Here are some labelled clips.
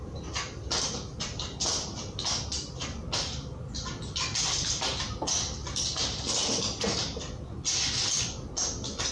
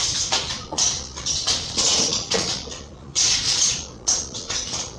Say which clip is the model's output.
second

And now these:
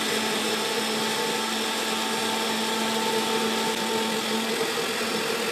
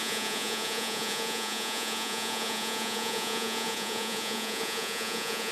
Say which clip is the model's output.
second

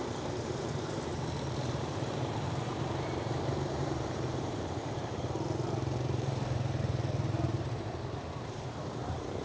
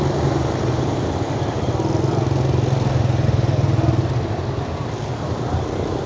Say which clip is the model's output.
first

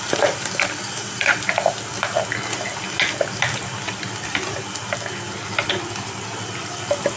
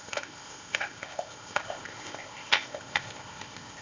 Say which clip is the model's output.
second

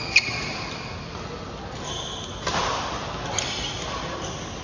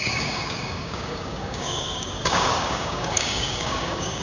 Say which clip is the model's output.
second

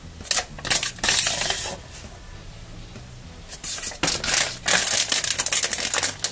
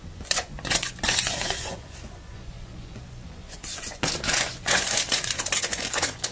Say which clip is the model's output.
second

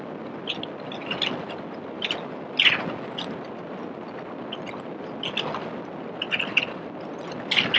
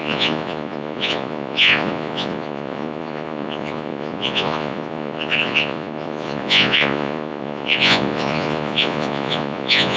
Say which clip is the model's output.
second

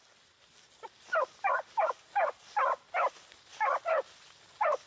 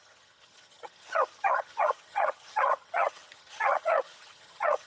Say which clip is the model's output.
second